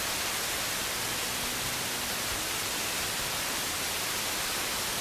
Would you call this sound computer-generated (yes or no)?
no